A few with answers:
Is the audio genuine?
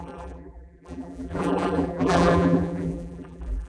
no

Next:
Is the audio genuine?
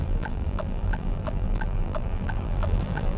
no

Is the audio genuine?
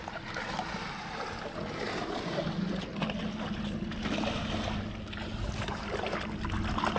yes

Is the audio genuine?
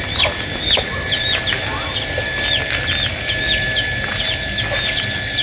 yes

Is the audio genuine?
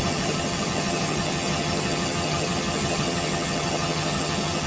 no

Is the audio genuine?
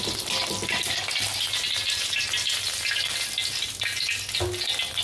yes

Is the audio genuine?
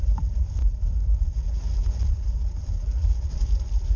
no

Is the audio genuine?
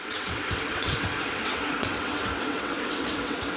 no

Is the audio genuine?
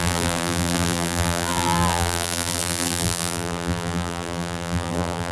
no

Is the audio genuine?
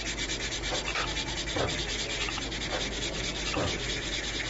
yes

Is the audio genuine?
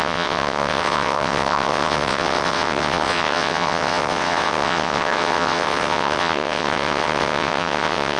no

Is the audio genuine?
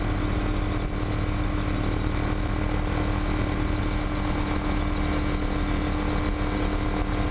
yes